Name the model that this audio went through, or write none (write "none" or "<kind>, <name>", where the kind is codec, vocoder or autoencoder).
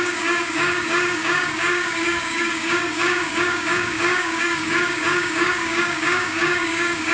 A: codec, DAC